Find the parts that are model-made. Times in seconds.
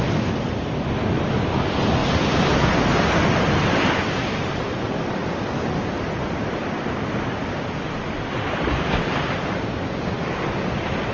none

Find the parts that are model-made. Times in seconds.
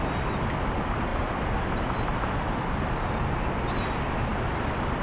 none